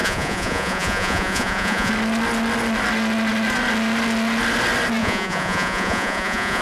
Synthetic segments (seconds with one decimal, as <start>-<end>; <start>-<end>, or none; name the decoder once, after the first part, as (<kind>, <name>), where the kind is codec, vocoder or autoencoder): 0.0-1.9 (vocoder, Vocos); 5.0-6.6